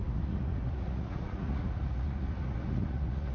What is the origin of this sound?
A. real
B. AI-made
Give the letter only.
B